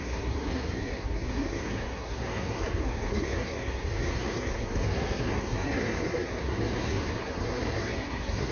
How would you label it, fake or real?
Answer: fake